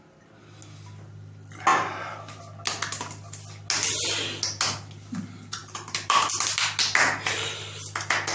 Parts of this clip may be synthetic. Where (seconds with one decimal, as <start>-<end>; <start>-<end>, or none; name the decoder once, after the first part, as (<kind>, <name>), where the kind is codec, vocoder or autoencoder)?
1.7-2.4 (vocoder, BigVGAN v2); 5.6-6.3